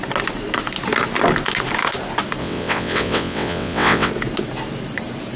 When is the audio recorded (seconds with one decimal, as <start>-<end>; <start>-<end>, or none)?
0.0-2.4; 4.1-5.4